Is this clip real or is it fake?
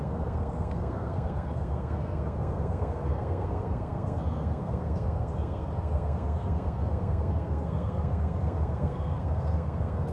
fake